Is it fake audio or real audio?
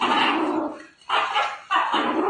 real